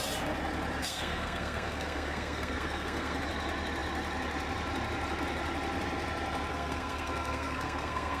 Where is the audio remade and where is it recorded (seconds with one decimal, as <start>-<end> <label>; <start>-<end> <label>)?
0.0-0.8 recorded; 0.8-3.2 remade; 3.2-6.5 recorded; 6.5-8.2 remade